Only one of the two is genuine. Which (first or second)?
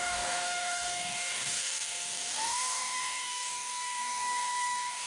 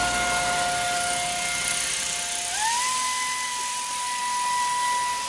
second